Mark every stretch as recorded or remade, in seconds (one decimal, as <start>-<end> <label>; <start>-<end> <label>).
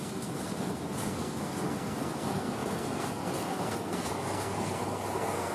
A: 0.0-5.5 remade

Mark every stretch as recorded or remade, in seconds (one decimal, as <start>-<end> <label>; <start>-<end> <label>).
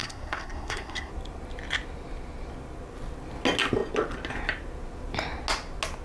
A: 0.0-1.1 remade; 1.1-6.0 recorded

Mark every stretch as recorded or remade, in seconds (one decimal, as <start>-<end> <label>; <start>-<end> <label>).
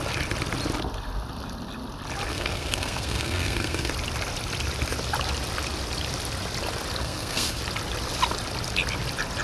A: 0.0-2.3 recorded; 2.3-3.9 remade; 3.9-7.0 recorded; 7.0-7.6 remade; 7.6-9.4 recorded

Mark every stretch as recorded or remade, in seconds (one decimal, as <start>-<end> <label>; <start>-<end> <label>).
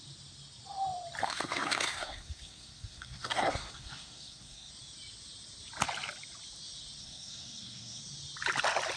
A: 0.0-1.2 recorded; 1.2-4.7 remade; 4.7-7.0 recorded; 7.0-8.0 remade; 8.0-9.0 recorded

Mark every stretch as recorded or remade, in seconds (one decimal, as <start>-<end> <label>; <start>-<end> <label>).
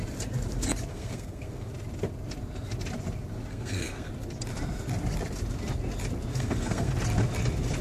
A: 0.0-0.9 recorded; 0.9-1.7 remade; 1.7-3.5 recorded; 3.5-4.1 remade; 4.1-6.3 recorded; 6.3-6.9 remade; 6.9-7.8 recorded